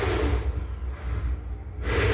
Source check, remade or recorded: recorded